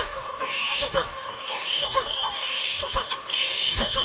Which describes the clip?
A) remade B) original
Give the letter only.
A